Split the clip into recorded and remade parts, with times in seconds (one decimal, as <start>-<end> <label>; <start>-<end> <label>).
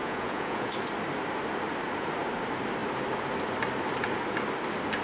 0.0-0.7 remade; 0.7-5.0 recorded